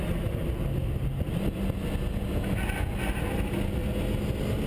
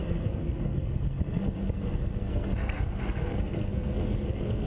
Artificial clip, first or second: second